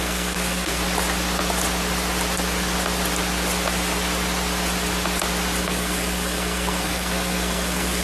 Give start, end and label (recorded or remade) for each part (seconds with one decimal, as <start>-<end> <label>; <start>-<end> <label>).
0.0-0.8 remade; 0.8-5.6 recorded; 5.6-8.0 remade